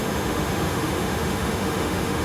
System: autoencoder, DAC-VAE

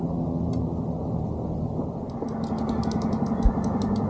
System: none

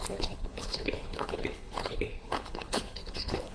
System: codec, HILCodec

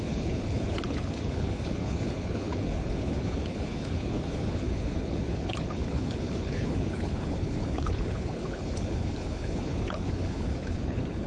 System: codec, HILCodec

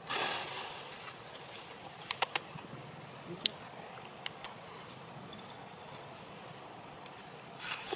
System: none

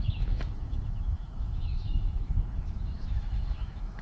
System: autoencoder, DAC-VAE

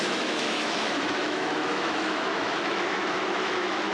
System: autoencoder, DAC-VAE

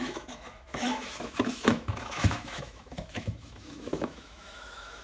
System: autoencoder, DAC-VAE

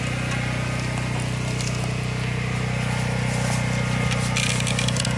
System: none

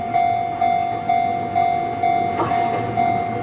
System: none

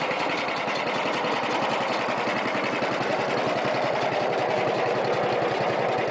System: none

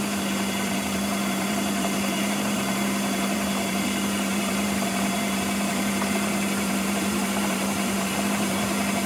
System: vocoder, BigVGAN v2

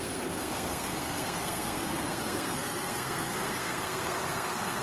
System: codec, SNAC